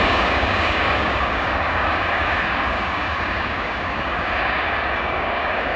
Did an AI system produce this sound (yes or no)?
yes